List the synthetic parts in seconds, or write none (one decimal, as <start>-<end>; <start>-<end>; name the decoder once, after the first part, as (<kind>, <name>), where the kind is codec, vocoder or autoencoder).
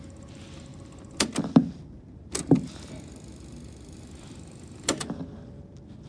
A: none